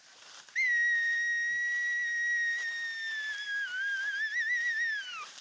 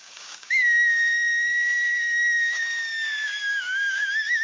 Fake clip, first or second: second